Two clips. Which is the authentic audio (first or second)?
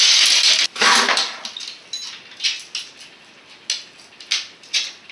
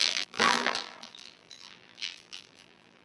first